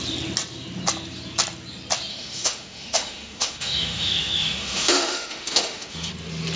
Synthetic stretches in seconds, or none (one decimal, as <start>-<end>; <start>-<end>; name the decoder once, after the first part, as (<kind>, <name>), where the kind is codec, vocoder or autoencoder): 2.1-6.1 (autoencoder, DAC-VAE)